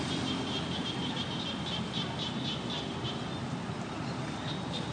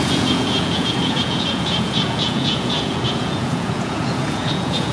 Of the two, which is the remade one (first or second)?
second